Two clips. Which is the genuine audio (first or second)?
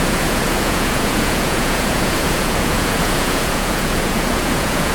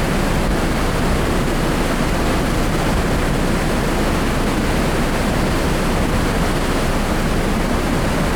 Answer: second